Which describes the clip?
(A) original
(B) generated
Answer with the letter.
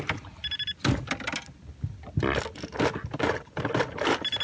A